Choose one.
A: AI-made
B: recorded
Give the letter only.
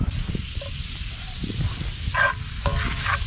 B